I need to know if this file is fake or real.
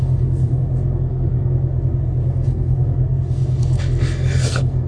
fake